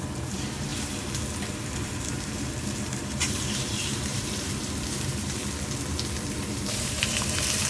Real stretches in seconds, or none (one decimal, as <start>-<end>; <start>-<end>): 0.7-1.6; 5.4-6.4